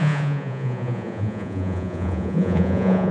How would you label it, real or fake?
fake